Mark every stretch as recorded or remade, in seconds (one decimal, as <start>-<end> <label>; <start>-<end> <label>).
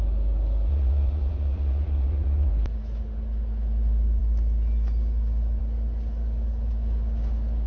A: 0.0-0.7 recorded; 0.7-2.5 remade; 2.5-7.7 recorded